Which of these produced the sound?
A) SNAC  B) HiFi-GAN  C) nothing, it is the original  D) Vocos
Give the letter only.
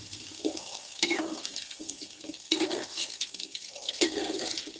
A